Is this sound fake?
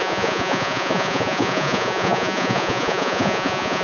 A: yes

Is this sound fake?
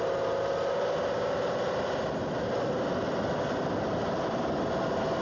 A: no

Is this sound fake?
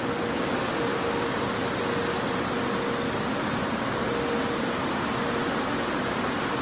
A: no